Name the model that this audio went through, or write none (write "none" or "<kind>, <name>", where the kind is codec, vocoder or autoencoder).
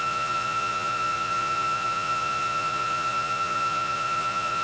vocoder, Vocos